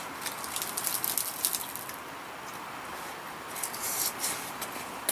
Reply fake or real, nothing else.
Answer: real